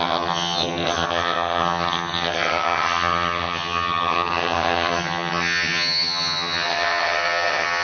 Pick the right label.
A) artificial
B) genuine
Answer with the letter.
A